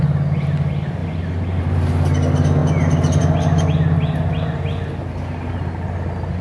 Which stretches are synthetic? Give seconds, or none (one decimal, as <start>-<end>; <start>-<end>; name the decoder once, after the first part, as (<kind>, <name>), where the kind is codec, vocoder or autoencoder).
none